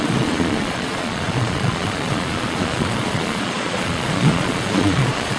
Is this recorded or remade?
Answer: remade